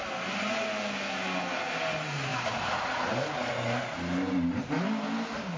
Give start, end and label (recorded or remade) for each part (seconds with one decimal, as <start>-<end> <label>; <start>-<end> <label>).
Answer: 0.0-5.6 recorded